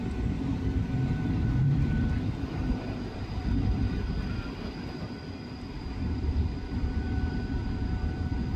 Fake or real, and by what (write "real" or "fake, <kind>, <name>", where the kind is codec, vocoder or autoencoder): fake, vocoder, BigVGAN v2